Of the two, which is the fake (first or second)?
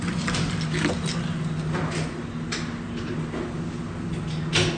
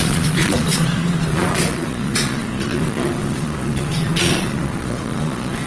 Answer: second